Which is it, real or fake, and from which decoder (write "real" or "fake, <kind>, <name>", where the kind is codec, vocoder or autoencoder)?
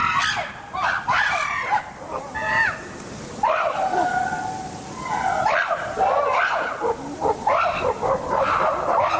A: real